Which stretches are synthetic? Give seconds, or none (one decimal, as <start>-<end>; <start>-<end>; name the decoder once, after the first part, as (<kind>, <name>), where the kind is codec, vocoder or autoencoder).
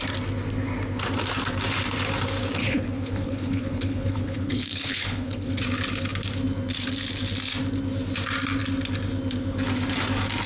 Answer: 2.6-5.6 (codec, HILCodec)